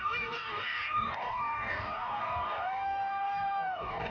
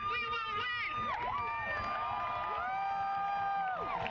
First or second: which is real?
second